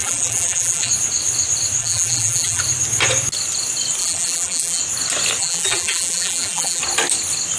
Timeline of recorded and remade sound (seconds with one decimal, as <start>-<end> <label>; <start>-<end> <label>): 0.0-0.9 remade; 0.9-1.8 recorded; 1.8-2.6 remade; 2.6-4.0 recorded; 4.0-4.8 remade; 4.8-5.4 recorded; 5.4-6.8 remade; 6.8-7.6 recorded